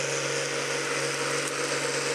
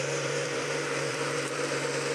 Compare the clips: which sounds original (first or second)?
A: first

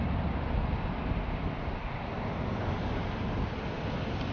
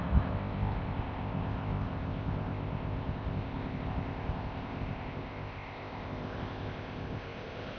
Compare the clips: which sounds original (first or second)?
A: first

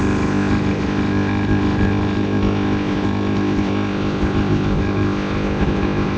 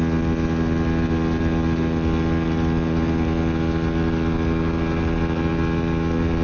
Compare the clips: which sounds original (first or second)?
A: second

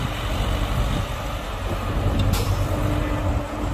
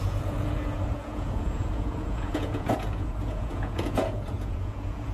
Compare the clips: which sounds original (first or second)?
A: first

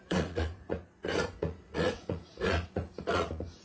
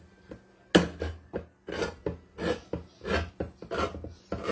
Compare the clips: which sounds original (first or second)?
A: second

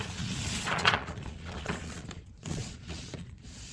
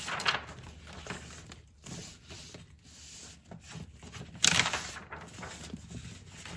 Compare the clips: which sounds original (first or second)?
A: second